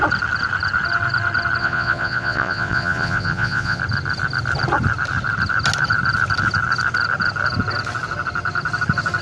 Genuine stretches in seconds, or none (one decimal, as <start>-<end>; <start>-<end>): 0.0-1.6; 3.8-9.2